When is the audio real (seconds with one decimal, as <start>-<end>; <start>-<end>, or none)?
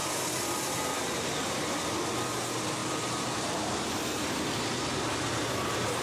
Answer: 1.0-6.0